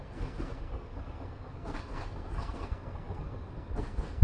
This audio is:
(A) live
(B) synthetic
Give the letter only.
B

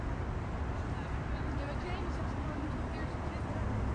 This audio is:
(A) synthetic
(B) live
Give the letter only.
B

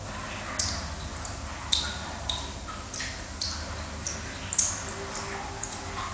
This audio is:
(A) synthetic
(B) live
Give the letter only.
B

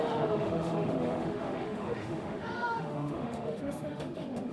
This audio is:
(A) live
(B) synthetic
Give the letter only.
B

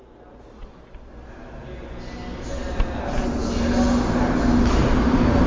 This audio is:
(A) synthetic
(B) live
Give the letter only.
B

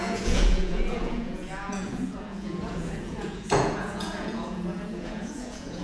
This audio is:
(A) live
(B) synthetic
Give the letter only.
B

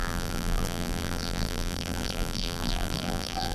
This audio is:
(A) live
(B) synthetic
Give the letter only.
B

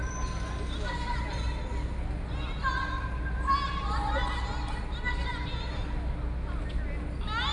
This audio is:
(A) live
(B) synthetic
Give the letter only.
A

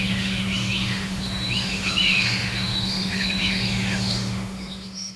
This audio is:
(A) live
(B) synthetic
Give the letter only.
B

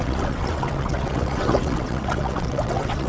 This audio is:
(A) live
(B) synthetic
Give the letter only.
B